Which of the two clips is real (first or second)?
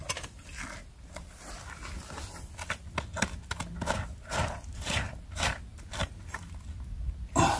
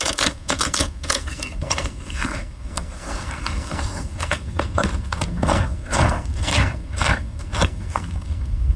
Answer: first